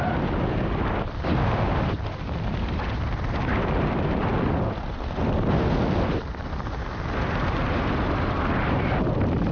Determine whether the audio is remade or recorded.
recorded